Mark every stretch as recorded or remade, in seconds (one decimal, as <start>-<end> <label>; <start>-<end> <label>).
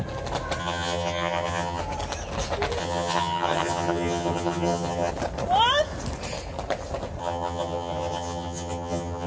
0.0-0.6 recorded; 0.6-1.8 remade; 1.8-2.8 recorded; 2.8-5.1 remade; 5.1-7.2 recorded; 7.2-9.3 remade